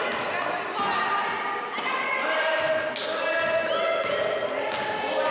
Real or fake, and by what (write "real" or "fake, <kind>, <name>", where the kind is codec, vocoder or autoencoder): real